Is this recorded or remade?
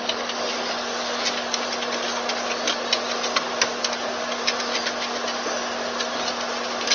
recorded